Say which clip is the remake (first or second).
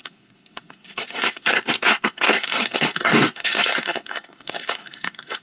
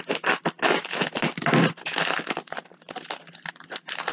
first